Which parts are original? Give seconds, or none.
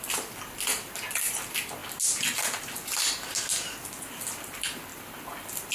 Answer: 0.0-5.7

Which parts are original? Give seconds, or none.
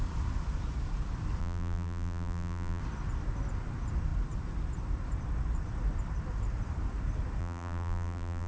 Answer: 0.0-1.4; 2.8-7.4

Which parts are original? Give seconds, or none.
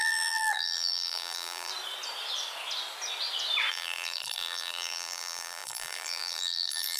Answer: 1.7-3.7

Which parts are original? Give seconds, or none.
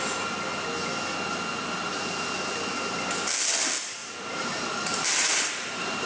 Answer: 0.0-4.0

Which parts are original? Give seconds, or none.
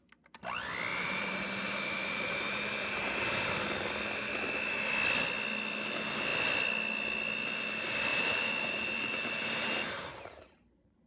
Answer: 0.0-0.9; 3.5-8.1; 10.1-11.1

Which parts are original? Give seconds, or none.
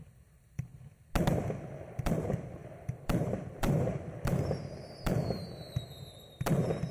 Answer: 0.7-1.3